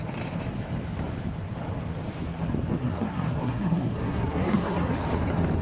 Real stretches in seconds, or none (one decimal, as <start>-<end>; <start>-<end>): 0.0-2.8; 4.9-5.6